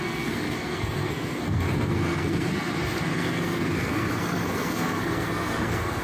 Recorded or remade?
remade